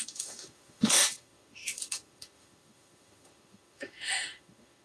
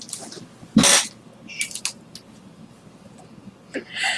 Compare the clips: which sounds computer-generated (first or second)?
first